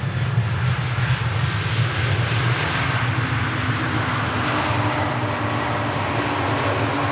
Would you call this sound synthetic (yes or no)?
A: no